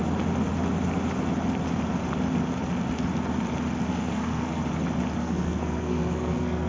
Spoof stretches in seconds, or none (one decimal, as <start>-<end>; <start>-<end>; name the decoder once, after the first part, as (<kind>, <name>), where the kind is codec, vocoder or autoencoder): 3.9-4.6 (codec, SNAC); 5.2-6.7

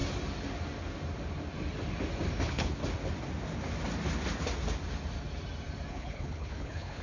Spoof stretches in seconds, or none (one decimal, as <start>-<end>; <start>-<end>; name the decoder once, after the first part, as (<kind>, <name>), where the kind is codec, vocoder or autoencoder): 2.4-2.8 (codec, HILCodec); 5.9-7.0